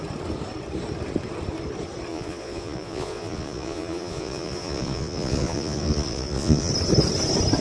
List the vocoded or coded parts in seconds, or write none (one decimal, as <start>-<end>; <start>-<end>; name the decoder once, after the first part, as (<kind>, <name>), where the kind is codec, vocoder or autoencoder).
2.1-6.7 (vocoder, Vocos)